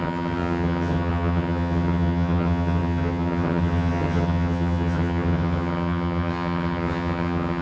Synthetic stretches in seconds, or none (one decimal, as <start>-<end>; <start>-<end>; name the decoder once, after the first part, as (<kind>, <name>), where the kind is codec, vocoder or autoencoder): 0.0-7.6 (vocoder, HiFi-GAN)